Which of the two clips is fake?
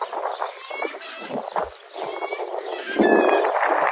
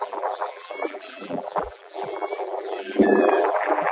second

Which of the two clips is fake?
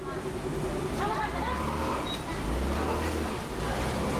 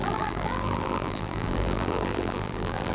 second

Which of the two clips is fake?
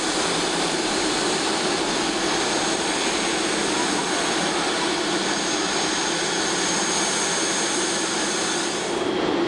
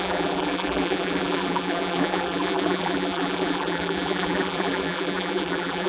second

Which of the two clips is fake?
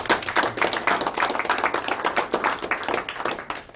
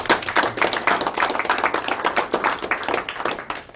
second